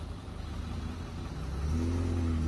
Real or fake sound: real